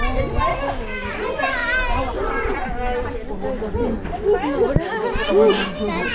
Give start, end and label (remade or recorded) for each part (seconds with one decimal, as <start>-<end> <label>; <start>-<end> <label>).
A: 0.0-0.5 recorded; 0.5-1.1 remade; 1.1-6.1 recorded